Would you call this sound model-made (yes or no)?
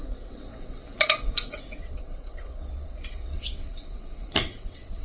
yes